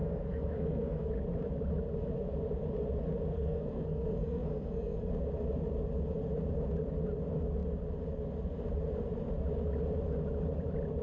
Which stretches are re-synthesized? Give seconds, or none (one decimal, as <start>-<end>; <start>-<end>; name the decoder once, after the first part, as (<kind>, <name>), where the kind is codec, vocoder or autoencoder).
0.0-1.1 (codec, SNAC); 3.3-5.1